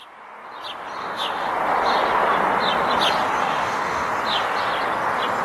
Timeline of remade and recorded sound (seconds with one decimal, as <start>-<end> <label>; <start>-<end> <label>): 0.0-1.0 recorded; 1.0-1.5 remade; 1.5-3.4 recorded; 3.4-4.1 remade; 4.1-5.4 recorded

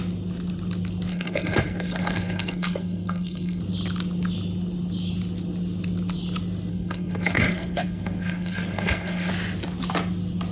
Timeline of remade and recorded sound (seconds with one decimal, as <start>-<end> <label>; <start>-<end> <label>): 0.0-1.1 recorded; 1.1-3.6 remade; 3.6-6.7 recorded; 6.7-9.3 remade; 9.3-10.5 recorded

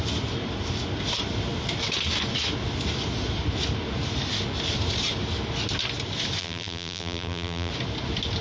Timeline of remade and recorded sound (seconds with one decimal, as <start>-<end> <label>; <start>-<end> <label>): 0.0-6.4 recorded; 6.4-7.7 remade; 7.7-8.4 recorded

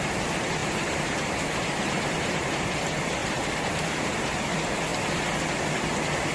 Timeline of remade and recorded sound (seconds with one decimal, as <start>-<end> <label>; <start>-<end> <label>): 0.0-0.6 recorded; 0.6-2.8 remade; 2.8-3.2 recorded; 3.2-4.1 remade; 4.1-6.3 recorded

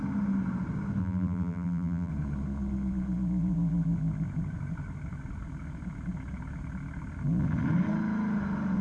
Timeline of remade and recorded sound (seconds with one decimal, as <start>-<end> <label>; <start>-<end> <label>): 0.0-1.0 recorded; 1.0-2.1 remade; 2.1-8.8 recorded

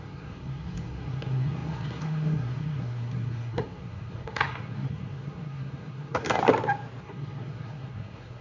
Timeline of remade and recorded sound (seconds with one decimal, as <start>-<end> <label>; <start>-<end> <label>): 0.0-6.4 remade; 6.4-7.0 recorded; 7.0-8.4 remade